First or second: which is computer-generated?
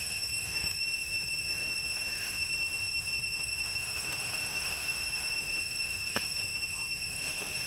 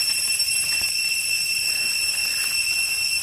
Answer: first